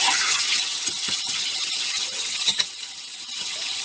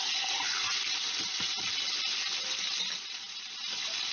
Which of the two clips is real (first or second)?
second